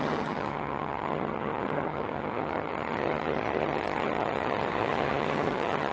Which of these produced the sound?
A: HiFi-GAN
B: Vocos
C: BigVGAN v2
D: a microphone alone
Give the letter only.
A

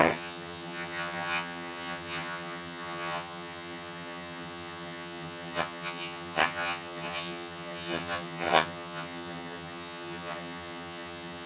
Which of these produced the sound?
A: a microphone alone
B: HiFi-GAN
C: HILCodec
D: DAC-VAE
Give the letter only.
B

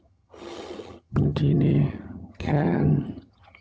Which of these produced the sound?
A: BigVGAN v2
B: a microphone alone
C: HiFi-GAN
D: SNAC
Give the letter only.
C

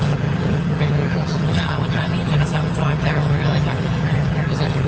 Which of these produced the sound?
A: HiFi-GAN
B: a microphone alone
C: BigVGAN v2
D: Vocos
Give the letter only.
A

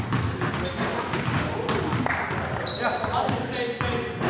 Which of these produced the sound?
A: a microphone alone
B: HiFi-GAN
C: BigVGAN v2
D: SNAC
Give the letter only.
A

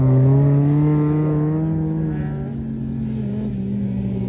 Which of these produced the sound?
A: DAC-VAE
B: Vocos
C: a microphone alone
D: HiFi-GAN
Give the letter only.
C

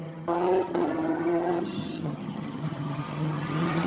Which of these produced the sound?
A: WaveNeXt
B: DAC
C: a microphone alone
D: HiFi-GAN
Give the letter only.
D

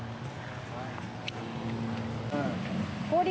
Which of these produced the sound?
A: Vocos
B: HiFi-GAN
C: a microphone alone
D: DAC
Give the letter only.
C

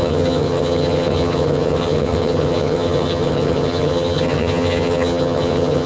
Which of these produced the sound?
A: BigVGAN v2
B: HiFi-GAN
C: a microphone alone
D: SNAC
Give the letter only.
B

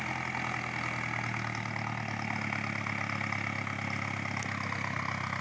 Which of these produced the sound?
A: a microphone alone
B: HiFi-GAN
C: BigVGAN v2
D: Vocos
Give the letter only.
A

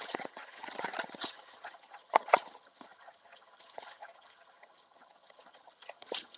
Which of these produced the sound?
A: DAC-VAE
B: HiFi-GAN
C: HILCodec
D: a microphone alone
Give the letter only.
B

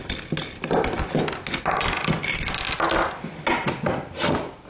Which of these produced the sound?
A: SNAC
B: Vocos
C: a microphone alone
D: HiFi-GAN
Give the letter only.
C